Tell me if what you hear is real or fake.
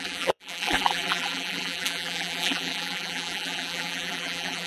fake